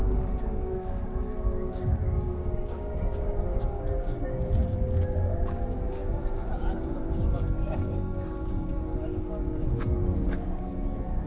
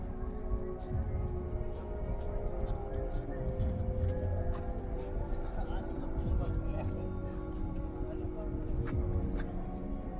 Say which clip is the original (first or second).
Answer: second